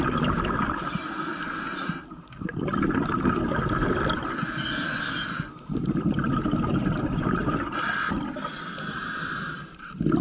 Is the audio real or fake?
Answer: real